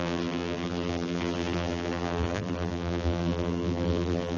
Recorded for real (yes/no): no